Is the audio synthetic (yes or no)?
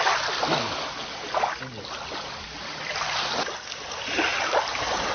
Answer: no